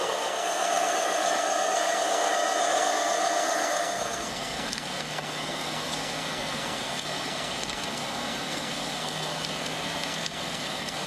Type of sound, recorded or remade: remade